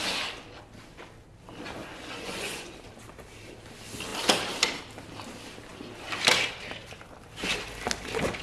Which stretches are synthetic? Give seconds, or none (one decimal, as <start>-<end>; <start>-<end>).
1.8-2.7